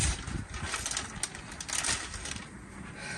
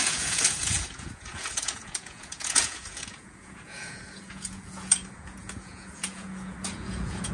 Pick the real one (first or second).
first